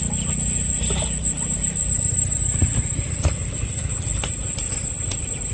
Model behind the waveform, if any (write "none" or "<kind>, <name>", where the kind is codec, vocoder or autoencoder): none